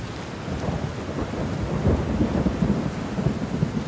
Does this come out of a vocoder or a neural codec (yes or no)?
no